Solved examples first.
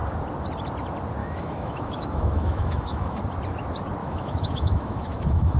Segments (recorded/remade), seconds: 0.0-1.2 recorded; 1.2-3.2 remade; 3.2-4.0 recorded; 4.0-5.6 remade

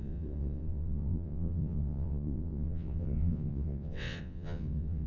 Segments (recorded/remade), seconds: 0.0-5.1 remade

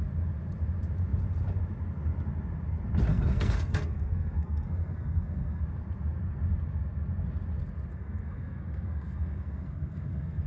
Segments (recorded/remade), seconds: 0.0-3.1 recorded; 3.1-5.6 remade; 5.6-7.9 recorded; 7.9-10.5 remade

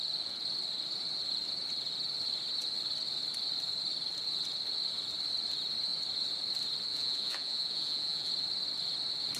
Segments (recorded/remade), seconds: 0.0-6.9 recorded; 6.9-8.3 remade; 8.3-9.4 recorded

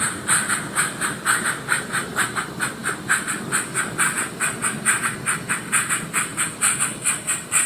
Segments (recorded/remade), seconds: 0.0-2.8 recorded; 2.8-5.0 remade; 5.0-6.3 recorded; 6.3-7.1 remade; 7.1-7.7 recorded